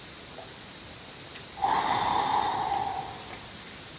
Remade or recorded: recorded